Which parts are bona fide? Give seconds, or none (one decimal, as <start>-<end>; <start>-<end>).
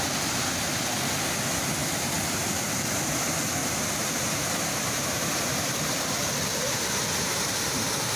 0.0-1.8; 2.5-3.6; 6.0-6.5